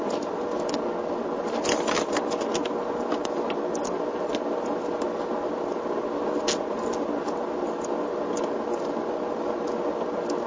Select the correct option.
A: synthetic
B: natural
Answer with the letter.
B